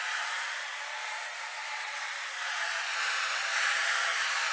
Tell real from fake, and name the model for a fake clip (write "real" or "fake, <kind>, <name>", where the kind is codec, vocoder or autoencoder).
real